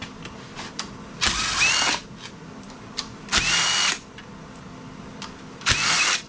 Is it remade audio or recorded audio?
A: recorded